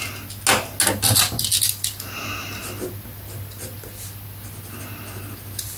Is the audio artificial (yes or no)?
no